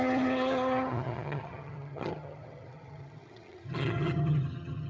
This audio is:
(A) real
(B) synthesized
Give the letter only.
B